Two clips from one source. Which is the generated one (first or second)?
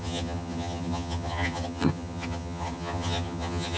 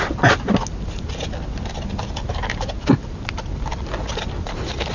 first